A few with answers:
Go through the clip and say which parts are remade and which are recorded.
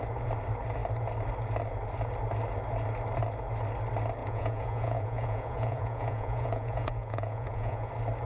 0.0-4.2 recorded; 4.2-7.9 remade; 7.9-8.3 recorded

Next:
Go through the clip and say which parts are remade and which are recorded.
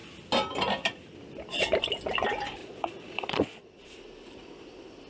0.0-2.6 recorded; 2.6-3.9 remade; 3.9-5.1 recorded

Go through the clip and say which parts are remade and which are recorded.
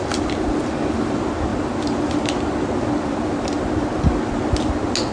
0.0-5.1 recorded